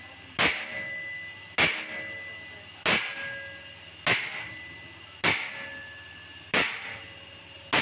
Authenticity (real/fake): real